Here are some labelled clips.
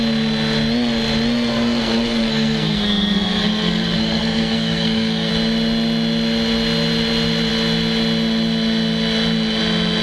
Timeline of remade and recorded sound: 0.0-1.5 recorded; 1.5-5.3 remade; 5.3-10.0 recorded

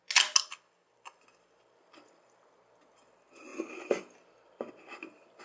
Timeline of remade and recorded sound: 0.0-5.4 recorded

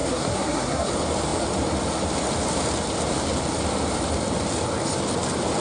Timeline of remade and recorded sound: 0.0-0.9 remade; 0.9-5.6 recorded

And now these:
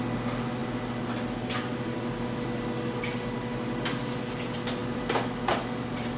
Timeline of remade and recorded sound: 0.0-6.2 recorded

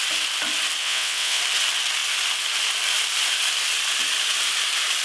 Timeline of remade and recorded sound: 0.0-0.8 recorded; 0.8-1.4 remade; 1.4-5.0 recorded